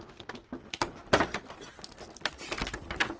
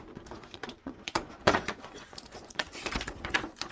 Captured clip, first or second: first